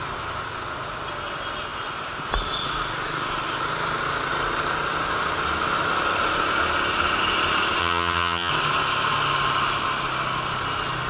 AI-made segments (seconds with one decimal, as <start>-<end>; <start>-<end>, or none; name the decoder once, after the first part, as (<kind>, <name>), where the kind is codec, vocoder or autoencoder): 7.8-8.5 (vocoder, HiFi-GAN)